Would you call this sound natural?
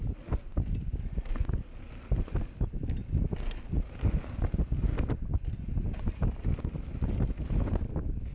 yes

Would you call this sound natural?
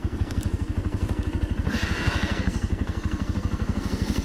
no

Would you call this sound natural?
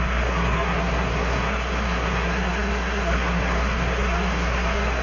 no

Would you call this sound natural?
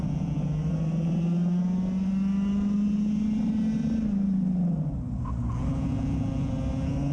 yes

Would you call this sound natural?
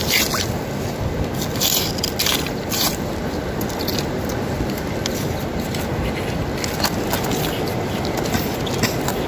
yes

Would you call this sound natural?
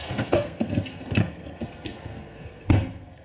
no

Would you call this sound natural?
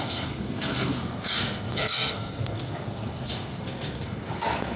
no